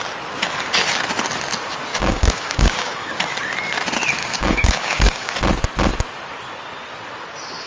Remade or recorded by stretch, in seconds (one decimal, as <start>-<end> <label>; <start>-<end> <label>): 0.0-1.9 recorded; 1.9-3.1 remade; 3.1-4.2 recorded; 4.2-5.3 remade; 5.3-7.7 recorded